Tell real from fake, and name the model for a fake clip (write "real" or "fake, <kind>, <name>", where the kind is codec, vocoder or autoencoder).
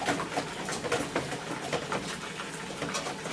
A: real